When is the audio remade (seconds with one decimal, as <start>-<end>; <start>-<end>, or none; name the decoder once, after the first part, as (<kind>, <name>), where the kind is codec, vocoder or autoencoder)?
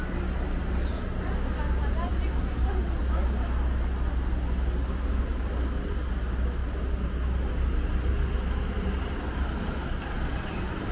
none